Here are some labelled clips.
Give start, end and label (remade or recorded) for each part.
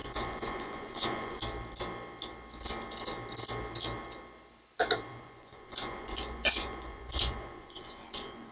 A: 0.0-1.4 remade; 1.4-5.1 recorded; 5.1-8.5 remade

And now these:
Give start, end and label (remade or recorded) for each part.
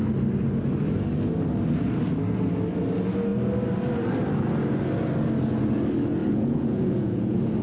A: 0.0-6.2 recorded; 6.2-7.6 remade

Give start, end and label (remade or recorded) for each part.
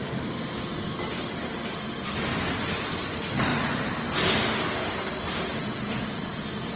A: 0.0-5.5 recorded; 5.5-6.8 remade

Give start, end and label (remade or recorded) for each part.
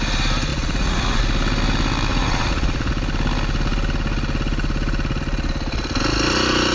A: 0.0-0.5 recorded; 0.5-1.2 remade; 1.2-2.1 recorded; 2.1-2.9 remade; 2.9-6.7 recorded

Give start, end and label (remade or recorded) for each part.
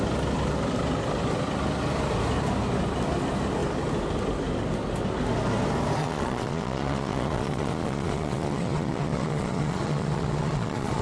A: 0.0-6.0 recorded; 6.0-11.0 remade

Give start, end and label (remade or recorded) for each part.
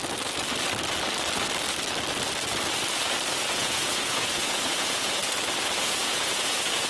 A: 0.0-3.5 recorded; 3.5-5.2 remade; 5.2-5.8 recorded; 5.8-6.9 remade